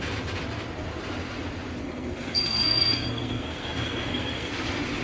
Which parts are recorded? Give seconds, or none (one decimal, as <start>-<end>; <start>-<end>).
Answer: 0.0-1.8; 4.5-5.0